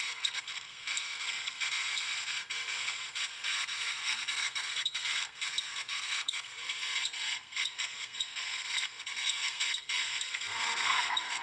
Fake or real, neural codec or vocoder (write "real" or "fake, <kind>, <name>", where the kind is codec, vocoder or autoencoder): fake, codec, SNAC